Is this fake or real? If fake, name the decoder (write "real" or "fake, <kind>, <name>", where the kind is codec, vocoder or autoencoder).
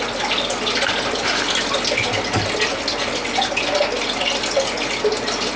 real